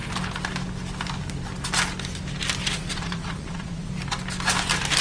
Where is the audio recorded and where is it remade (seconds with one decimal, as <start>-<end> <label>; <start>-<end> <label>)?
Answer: 0.0-2.6 recorded; 2.6-3.9 remade; 3.9-5.0 recorded